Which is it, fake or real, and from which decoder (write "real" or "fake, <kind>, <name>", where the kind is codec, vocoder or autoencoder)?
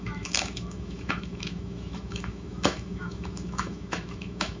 fake, autoencoder, DAC-VAE